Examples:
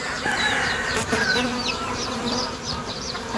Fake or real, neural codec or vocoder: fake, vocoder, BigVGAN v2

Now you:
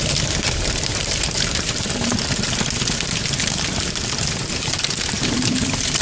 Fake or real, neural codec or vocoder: fake, vocoder, BigVGAN v2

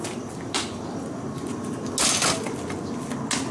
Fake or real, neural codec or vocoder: real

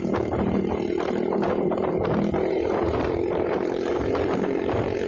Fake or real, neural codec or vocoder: fake, vocoder, BigVGAN v2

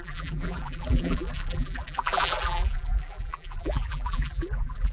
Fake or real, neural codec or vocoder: fake, vocoder, BigVGAN v2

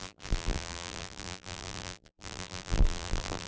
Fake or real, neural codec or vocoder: fake, vocoder, BigVGAN v2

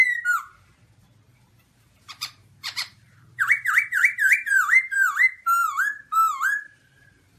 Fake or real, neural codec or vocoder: fake, vocoder, BigVGAN v2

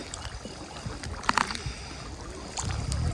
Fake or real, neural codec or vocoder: real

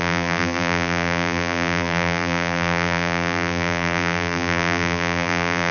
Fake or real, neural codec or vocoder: fake, vocoder, BigVGAN v2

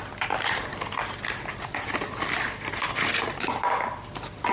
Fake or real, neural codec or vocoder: real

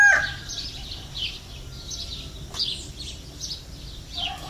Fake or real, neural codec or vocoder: real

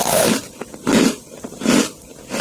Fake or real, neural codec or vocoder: fake, vocoder, BigVGAN v2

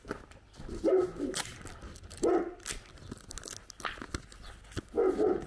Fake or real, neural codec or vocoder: real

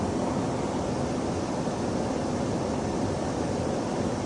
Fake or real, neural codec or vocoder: real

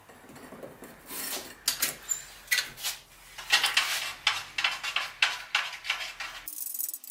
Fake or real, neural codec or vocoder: real